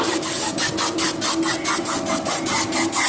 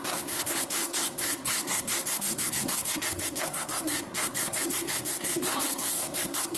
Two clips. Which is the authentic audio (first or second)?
first